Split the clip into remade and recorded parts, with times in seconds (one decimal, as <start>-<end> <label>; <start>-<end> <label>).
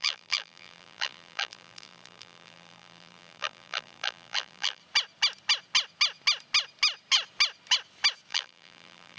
0.0-4.8 remade; 4.8-8.3 recorded; 8.3-9.2 remade